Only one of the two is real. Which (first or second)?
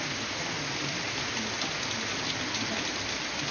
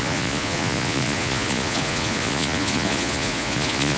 first